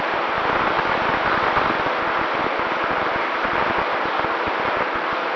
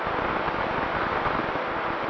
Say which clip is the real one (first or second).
second